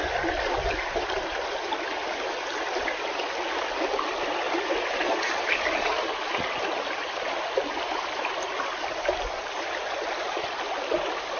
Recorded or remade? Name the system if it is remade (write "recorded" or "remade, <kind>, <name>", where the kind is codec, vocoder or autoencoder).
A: recorded